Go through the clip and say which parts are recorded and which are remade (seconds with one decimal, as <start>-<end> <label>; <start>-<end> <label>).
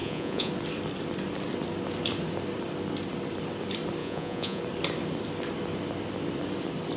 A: 0.0-0.5 remade; 0.5-4.0 recorded; 4.0-4.6 remade; 4.6-7.0 recorded